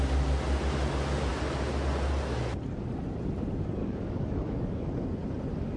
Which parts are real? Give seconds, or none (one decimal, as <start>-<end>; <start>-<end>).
0.0-3.8; 4.9-5.8